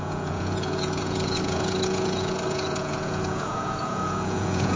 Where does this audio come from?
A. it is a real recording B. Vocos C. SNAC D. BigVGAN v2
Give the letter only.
B